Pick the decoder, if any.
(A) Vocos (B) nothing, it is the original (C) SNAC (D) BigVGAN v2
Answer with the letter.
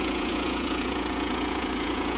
A